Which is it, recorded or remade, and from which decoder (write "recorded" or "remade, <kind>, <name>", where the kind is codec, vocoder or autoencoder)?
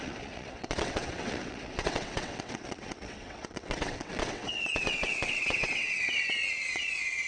remade, vocoder, WaveNeXt